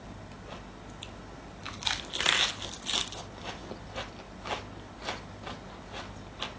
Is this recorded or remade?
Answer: recorded